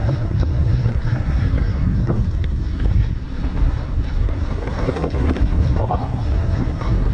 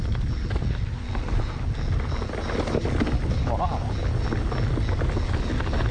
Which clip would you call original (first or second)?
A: second